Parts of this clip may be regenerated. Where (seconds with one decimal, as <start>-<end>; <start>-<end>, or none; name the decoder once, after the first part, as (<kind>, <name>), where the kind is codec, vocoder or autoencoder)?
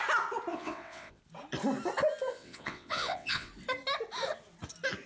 0.5-1.2 (vocoder, WaveNeXt); 2.3-3.5